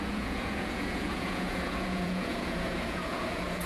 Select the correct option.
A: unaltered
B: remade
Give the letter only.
B